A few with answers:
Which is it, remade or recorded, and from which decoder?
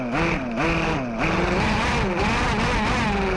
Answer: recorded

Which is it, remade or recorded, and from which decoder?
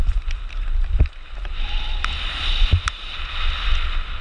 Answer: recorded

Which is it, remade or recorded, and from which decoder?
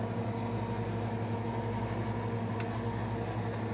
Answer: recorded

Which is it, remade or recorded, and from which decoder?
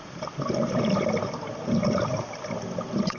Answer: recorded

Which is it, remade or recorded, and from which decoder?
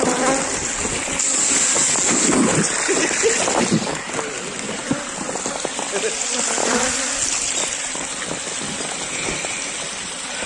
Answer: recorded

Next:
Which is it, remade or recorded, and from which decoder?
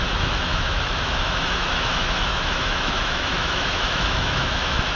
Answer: remade, autoencoder, DAC-VAE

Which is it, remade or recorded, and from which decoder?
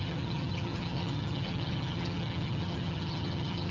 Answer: remade, vocoder, HiFi-GAN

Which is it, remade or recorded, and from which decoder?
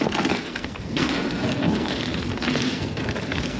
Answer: remade, codec, SNAC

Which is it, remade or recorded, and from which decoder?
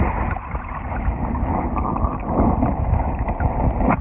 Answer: recorded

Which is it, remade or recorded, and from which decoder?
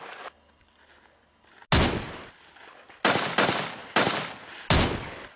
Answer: recorded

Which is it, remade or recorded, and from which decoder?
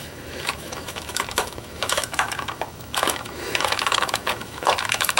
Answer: remade, autoencoder, DAC-VAE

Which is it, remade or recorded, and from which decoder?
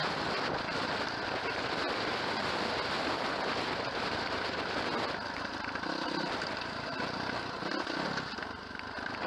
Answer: recorded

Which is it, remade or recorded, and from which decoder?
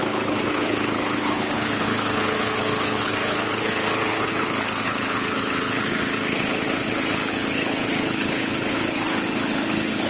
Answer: remade, codec, HILCodec